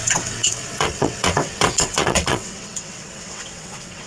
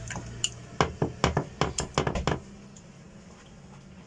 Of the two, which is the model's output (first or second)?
first